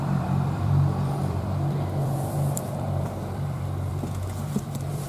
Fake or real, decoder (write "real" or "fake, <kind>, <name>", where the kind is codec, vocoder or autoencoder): fake, vocoder, BigVGAN v2